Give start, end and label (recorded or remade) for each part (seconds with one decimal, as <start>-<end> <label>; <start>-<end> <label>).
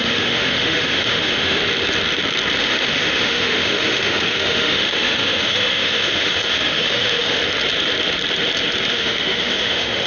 0.0-1.6 remade; 1.6-2.6 recorded; 2.6-7.4 remade; 7.4-8.9 recorded; 8.9-10.1 remade